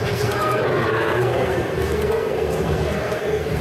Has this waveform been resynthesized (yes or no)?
yes